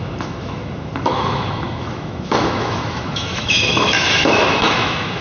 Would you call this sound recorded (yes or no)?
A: no